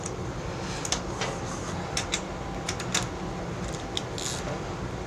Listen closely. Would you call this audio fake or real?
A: real